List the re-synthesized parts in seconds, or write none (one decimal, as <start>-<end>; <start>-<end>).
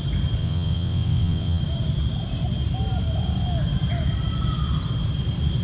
0.4-1.6